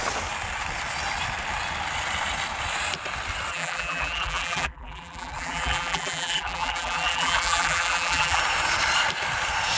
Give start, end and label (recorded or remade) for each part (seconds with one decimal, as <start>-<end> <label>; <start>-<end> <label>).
0.0-3.5 recorded; 3.5-8.4 remade; 8.4-9.8 recorded